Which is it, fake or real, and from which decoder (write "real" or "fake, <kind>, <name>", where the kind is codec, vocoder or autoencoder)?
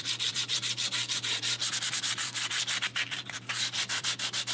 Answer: fake, vocoder, BigVGAN v2